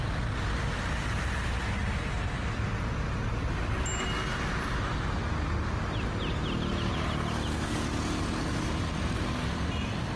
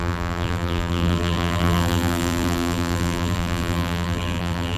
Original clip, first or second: first